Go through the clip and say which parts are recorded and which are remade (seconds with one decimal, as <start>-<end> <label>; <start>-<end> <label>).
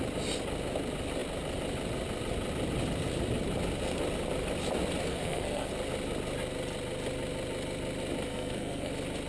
0.0-5.1 recorded; 5.1-5.7 remade; 5.7-8.3 recorded; 8.3-8.9 remade; 8.9-9.3 recorded